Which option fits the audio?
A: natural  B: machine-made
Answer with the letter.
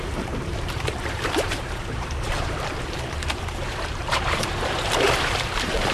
B